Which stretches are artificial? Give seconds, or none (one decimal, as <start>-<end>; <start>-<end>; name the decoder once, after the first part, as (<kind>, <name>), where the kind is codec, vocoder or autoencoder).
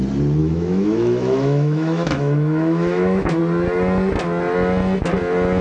0.4-3.4 (autoencoder, DAC-VAE)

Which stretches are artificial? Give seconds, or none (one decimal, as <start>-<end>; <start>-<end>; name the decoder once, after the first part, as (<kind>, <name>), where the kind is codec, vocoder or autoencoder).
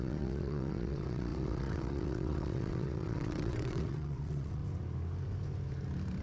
0.0-4.6 (vocoder, WaveNeXt)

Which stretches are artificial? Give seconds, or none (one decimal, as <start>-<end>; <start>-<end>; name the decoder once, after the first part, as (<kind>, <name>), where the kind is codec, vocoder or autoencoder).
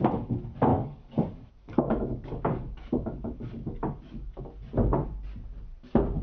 0.7-4.4 (codec, DAC)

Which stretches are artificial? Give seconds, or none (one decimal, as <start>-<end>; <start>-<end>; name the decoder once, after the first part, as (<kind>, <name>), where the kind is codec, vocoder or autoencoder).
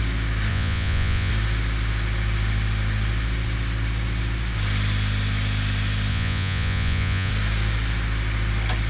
0.5-1.3 (vocoder, Vocos); 6.1-7.3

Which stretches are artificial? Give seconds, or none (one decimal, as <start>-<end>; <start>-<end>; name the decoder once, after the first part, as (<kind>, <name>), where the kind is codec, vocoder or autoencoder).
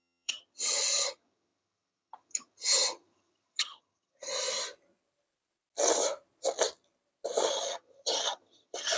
0.0-4.3 (vocoder, HiFi-GAN); 7.5-9.0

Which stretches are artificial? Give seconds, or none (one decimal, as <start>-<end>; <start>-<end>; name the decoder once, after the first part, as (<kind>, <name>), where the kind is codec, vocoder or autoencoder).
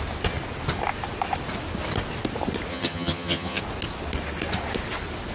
2.7-3.6 (vocoder, HiFi-GAN)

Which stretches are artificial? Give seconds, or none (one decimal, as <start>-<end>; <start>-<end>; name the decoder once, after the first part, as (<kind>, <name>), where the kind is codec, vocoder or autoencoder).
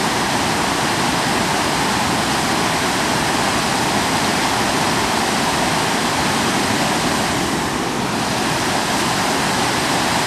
none